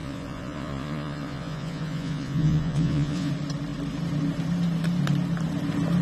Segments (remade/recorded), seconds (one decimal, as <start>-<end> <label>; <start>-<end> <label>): 0.0-3.3 remade; 3.3-6.0 recorded